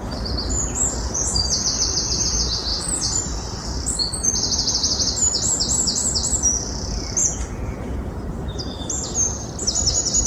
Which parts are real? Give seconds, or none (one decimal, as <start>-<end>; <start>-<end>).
0.0-7.2; 8.1-10.3